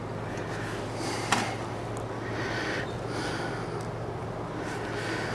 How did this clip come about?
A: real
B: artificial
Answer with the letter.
A